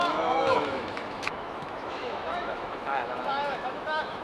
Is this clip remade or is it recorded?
remade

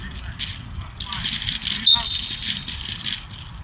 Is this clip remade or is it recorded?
recorded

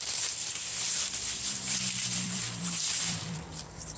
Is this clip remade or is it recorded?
remade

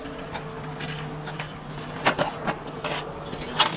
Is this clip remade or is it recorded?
recorded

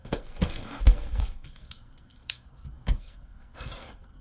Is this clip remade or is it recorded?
remade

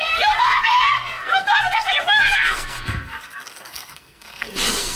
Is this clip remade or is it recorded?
remade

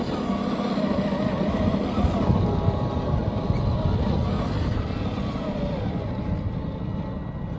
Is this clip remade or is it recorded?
recorded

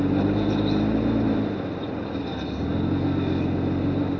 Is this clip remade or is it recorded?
recorded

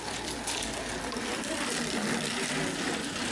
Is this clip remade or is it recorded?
recorded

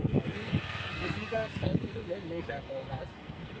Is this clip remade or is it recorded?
remade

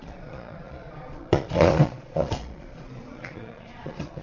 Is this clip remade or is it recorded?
remade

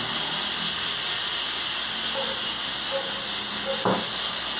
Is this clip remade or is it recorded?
recorded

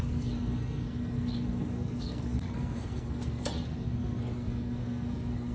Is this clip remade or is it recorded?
remade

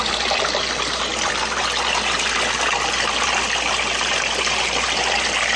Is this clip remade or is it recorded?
recorded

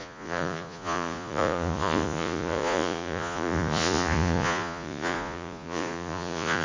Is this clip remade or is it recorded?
remade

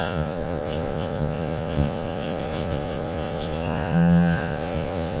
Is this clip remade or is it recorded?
remade